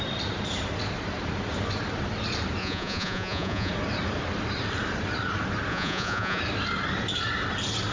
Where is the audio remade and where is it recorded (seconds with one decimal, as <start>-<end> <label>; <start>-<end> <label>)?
0.0-2.6 recorded; 2.6-3.7 remade; 3.7-5.7 recorded; 5.7-6.4 remade; 6.4-7.9 recorded